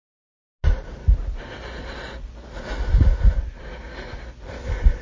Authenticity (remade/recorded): recorded